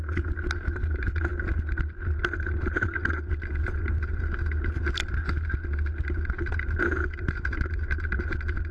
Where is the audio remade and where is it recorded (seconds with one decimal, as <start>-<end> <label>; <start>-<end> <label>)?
0.0-8.7 recorded

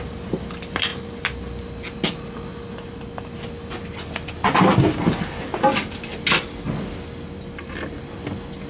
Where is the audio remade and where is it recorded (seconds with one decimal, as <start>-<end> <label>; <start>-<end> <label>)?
0.0-8.7 recorded

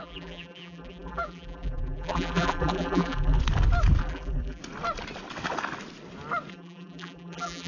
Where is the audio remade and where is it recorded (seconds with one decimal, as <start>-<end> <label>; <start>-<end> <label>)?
0.0-3.4 remade; 3.4-4.0 recorded; 4.0-4.6 remade; 4.6-6.5 recorded; 6.5-7.7 remade

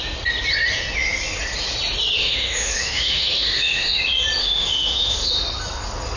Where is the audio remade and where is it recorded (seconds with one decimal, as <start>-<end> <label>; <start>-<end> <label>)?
0.0-2.2 recorded; 2.2-4.0 remade; 4.0-4.4 recorded; 4.4-5.3 remade; 5.3-6.2 recorded

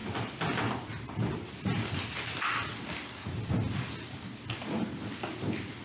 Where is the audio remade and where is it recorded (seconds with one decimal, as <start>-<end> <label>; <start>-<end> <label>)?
0.0-5.8 recorded

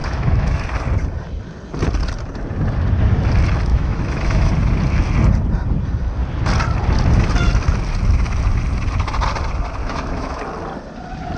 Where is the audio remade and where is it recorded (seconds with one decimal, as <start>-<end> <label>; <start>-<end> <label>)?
0.0-0.6 remade; 0.6-3.7 recorded; 3.7-4.5 remade; 4.5-9.8 recorded; 9.8-10.4 remade; 10.4-11.4 recorded